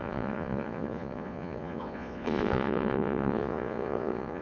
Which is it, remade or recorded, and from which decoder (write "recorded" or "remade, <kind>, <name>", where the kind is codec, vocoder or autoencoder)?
remade, vocoder, Vocos